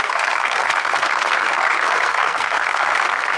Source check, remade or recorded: remade